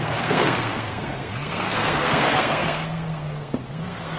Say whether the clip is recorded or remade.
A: remade